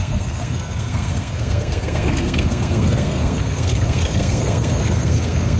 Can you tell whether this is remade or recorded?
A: remade